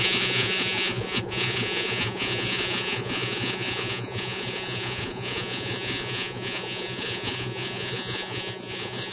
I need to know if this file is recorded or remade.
remade